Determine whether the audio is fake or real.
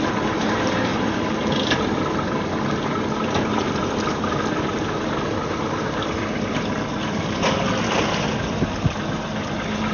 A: real